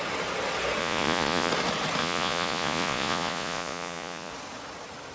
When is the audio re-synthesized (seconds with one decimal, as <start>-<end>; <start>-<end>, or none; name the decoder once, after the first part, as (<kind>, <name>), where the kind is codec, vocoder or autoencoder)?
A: 0.8-1.5 (vocoder, Vocos); 2.0-4.3